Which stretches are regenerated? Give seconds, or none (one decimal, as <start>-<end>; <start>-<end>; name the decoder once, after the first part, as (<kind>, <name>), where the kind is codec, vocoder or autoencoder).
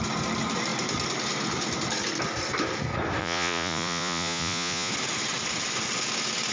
3.2-4.9 (vocoder, Vocos)